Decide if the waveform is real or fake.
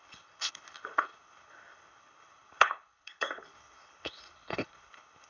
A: fake